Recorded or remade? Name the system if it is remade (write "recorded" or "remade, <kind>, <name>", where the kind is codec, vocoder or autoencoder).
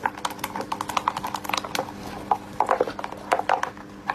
recorded